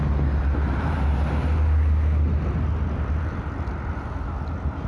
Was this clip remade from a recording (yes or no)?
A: no